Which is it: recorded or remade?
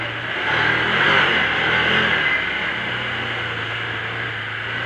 recorded